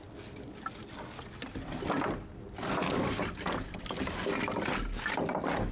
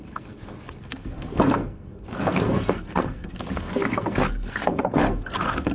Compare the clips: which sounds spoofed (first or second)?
second